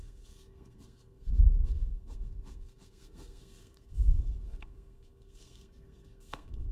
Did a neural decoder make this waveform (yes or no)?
yes